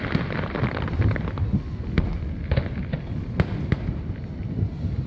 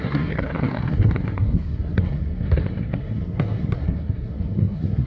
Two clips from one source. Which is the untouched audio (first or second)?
first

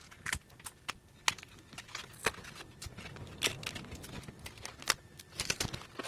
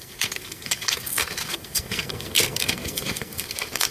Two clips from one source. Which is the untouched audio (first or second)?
first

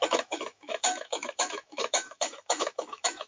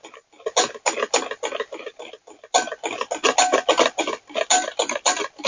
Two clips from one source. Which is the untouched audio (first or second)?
second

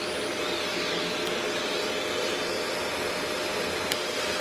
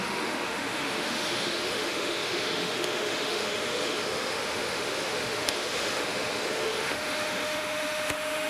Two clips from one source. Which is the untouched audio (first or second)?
first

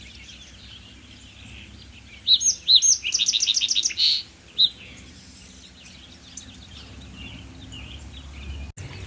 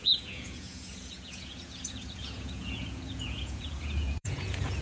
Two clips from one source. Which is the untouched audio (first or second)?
first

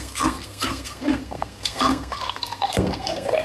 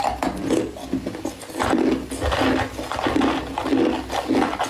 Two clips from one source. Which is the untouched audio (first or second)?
second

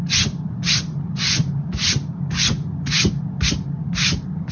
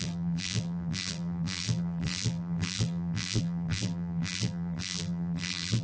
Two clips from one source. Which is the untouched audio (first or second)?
first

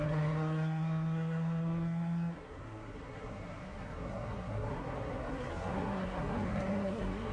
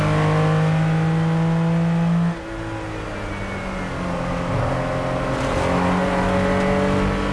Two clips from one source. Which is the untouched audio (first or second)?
second